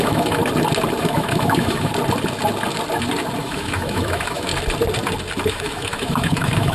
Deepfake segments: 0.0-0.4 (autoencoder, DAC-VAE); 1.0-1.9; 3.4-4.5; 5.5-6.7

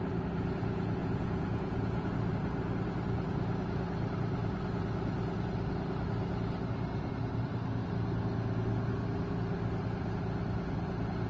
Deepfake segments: 1.0-2.1 (vocoder, Vocos)

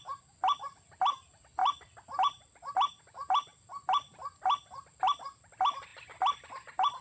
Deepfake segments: 1.6-3.0 (vocoder, BigVGAN v2)

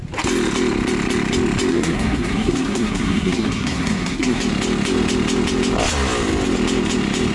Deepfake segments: 1.7-4.4 (codec, SNAC)

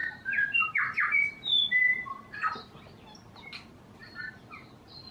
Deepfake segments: none

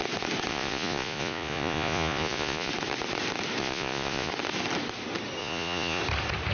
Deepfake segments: 0.5-2.7 (vocoder, Vocos); 3.6-4.3; 5.4-6.0